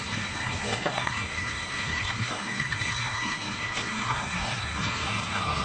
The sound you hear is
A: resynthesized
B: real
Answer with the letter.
A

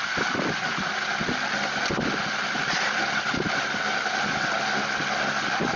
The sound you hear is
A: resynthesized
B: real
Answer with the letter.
B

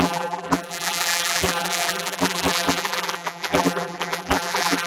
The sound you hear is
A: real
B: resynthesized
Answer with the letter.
B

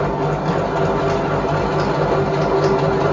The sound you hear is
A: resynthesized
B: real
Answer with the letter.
B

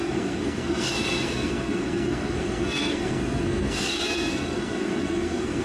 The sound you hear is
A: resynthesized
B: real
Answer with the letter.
A